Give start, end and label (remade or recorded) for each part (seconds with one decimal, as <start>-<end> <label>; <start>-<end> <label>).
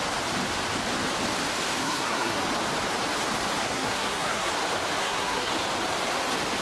0.0-1.8 recorded; 1.8-2.4 remade; 2.4-3.6 recorded; 3.6-4.5 remade; 4.5-5.0 recorded; 5.0-5.5 remade; 5.5-6.6 recorded